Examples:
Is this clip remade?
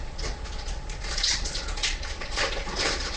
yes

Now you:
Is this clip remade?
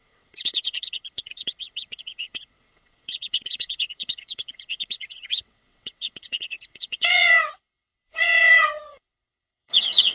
yes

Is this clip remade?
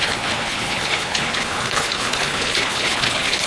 yes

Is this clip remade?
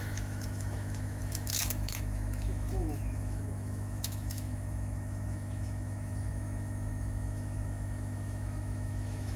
yes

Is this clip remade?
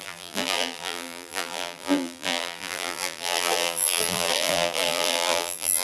yes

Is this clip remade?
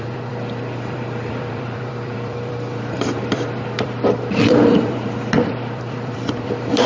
yes